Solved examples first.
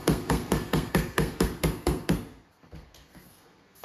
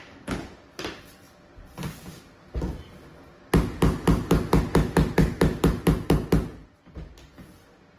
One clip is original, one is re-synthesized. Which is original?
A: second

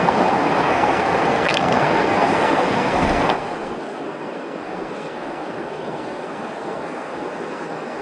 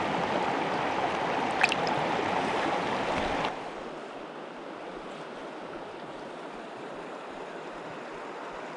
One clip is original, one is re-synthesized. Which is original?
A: second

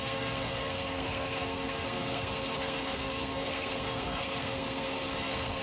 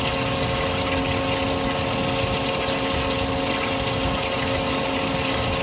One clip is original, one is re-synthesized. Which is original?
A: second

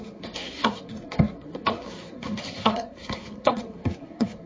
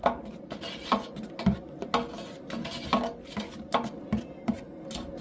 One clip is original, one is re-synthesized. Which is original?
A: second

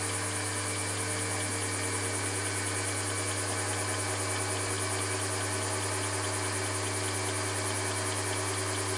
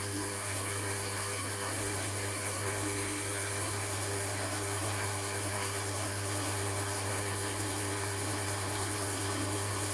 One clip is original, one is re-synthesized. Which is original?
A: first